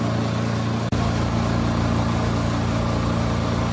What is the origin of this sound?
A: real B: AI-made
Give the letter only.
A